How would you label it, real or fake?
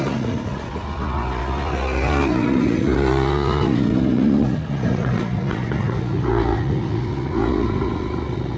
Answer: fake